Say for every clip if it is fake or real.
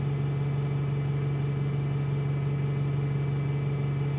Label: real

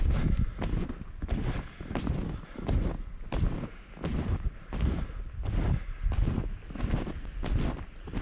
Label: real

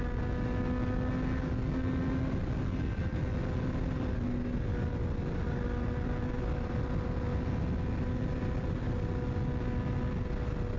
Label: real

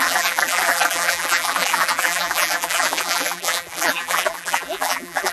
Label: fake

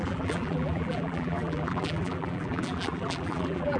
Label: fake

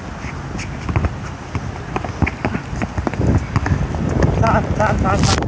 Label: real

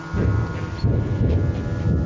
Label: real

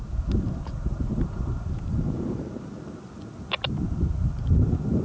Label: real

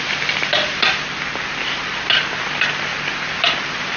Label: real